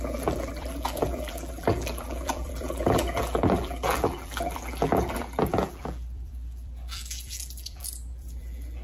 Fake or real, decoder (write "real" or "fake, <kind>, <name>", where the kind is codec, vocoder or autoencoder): fake, vocoder, BigVGAN v2